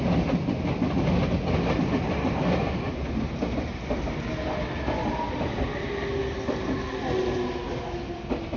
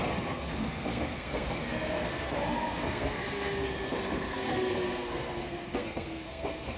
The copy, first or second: second